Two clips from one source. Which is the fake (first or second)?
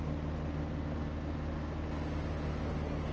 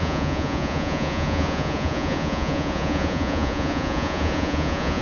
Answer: second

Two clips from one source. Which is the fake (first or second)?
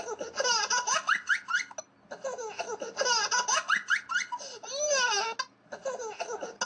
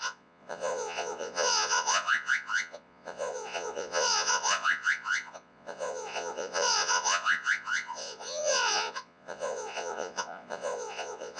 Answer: second